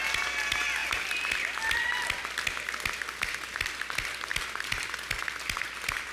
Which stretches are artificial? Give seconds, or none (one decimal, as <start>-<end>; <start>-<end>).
none